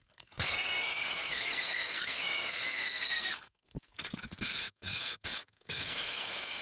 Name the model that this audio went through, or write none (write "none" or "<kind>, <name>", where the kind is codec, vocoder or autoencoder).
codec, SNAC